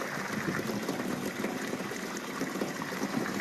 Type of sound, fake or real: real